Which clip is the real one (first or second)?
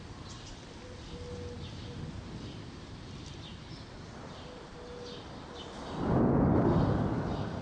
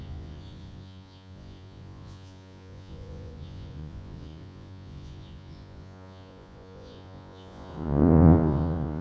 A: first